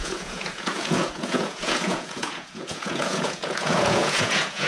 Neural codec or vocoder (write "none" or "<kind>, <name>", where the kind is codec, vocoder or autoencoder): vocoder, Vocos